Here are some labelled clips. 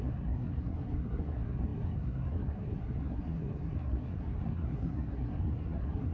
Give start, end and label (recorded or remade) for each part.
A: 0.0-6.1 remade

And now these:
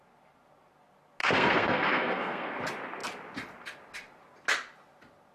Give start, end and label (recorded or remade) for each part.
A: 0.0-1.2 recorded; 1.2-2.6 remade; 2.6-5.3 recorded

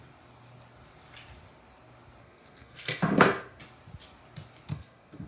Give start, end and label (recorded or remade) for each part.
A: 0.0-2.2 recorded; 2.2-3.6 remade; 3.6-4.7 recorded; 4.7-5.3 remade

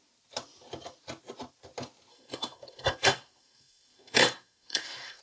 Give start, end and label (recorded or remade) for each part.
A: 0.0-2.1 recorded; 2.1-5.2 remade

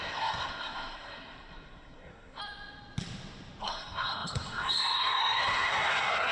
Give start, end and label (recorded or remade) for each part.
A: 0.0-2.4 remade; 2.4-3.6 recorded; 3.6-6.3 remade

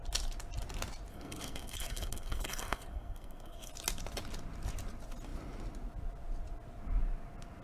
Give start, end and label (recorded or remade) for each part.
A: 0.0-1.1 recorded; 1.1-3.7 remade; 3.7-7.6 recorded

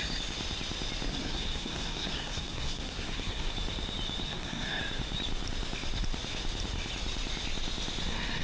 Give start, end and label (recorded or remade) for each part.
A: 0.0-1.1 recorded; 1.1-3.5 remade; 3.5-4.2 recorded; 4.2-4.8 remade; 4.8-8.4 recorded